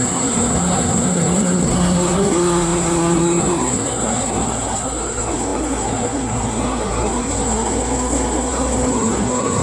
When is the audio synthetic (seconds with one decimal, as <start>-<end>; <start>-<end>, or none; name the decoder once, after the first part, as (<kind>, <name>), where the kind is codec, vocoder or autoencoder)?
0.0-9.6 (codec, SNAC)